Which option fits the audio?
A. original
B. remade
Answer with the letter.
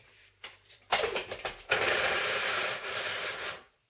B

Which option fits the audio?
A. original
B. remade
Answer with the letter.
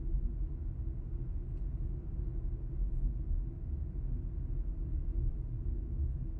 A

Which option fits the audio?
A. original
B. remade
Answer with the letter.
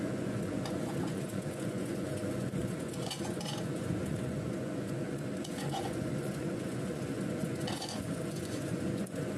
B